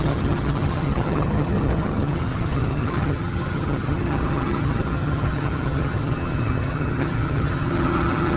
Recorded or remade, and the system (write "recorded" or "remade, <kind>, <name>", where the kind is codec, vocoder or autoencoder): remade, vocoder, HiFi-GAN